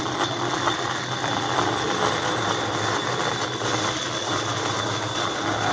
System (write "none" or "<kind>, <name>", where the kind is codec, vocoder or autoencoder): none